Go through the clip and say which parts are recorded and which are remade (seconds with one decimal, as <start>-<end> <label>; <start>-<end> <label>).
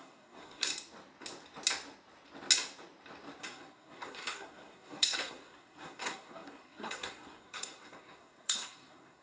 0.0-0.7 remade; 0.7-3.4 recorded; 3.4-9.2 remade